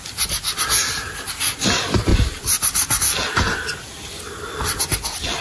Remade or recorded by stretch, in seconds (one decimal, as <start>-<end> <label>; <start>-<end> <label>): 0.0-5.4 recorded